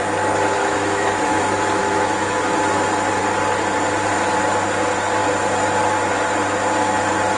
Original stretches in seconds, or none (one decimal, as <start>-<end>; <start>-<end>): 0.0-0.6; 1.4-1.8; 2.6-7.4